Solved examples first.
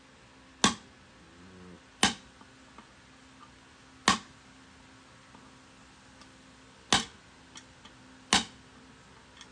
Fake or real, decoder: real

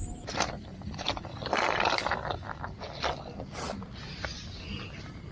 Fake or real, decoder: real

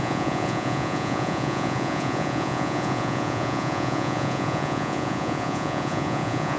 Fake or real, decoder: fake, vocoder, Vocos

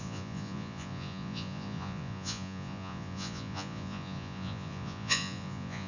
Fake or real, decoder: fake, vocoder, Vocos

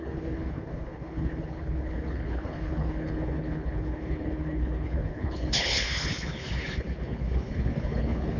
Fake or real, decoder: fake, codec, HILCodec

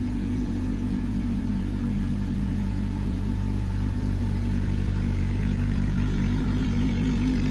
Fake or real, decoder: fake, vocoder, Vocos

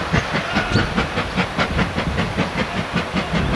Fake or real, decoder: real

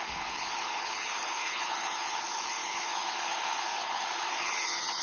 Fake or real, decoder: fake, codec, HILCodec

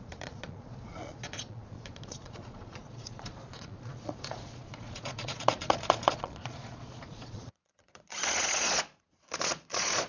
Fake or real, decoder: fake, vocoder, Vocos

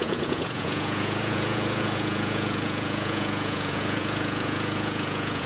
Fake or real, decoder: fake, vocoder, Vocos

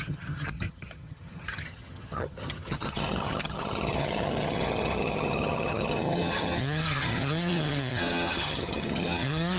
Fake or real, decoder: fake, vocoder, HiFi-GAN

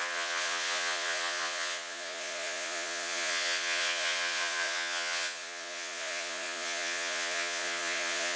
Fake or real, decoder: fake, vocoder, Vocos